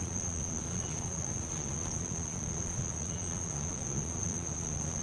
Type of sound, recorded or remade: remade